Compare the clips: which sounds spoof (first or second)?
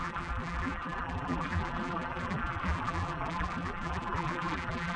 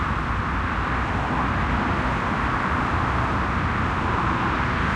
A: first